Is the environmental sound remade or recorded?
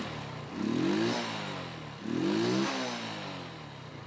recorded